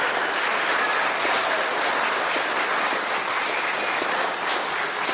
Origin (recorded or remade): recorded